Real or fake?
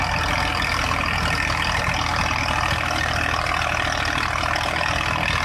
real